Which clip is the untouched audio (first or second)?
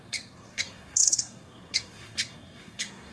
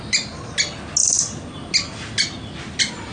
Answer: second